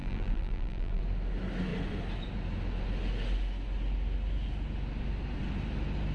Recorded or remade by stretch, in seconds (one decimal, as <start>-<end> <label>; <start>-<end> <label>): 0.0-1.0 remade; 1.0-6.1 recorded